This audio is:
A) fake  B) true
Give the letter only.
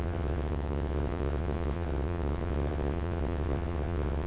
A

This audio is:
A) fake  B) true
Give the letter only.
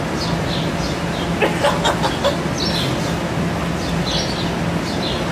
B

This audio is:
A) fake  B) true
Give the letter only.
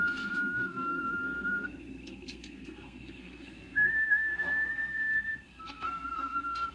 A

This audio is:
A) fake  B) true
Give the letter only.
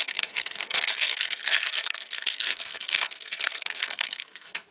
A